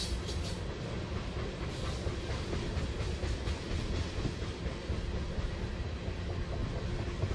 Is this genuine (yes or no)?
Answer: yes